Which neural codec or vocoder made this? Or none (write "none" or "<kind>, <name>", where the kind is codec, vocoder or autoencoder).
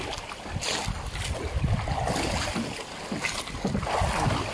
none